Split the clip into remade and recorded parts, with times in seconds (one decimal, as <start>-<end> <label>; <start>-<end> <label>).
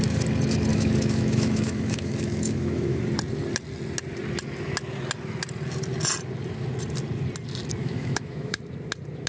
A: 0.0-0.7 recorded; 0.7-3.0 remade; 3.0-7.8 recorded; 7.8-8.6 remade; 8.6-9.3 recorded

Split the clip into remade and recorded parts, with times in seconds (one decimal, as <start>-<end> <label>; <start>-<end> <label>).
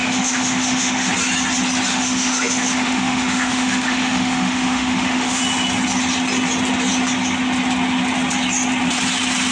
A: 0.0-1.1 remade; 1.1-1.9 recorded; 1.9-5.4 remade; 5.4-9.5 recorded